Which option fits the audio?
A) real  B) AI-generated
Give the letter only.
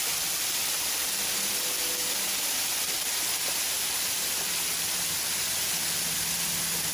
A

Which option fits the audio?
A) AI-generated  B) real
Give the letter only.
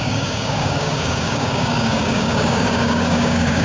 A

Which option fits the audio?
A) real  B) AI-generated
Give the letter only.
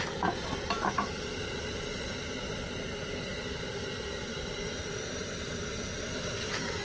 A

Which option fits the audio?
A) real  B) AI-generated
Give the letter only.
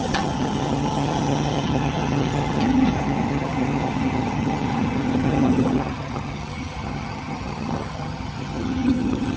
B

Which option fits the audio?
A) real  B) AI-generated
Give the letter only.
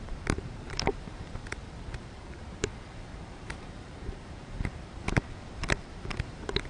B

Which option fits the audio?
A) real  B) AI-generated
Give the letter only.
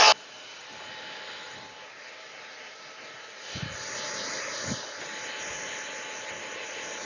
A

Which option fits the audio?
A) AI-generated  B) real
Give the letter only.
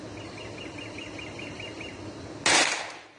B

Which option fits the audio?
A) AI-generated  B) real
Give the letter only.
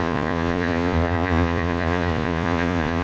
A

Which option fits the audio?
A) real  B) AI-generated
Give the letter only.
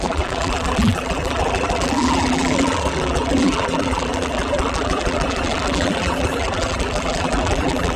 B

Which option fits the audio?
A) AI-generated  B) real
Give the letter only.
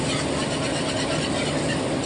B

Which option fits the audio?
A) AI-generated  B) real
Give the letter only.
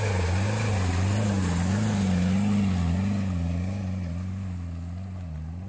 B